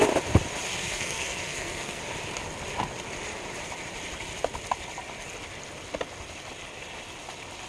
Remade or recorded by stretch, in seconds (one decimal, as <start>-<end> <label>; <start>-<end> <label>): 0.0-0.8 recorded; 0.8-2.0 remade; 2.0-7.7 recorded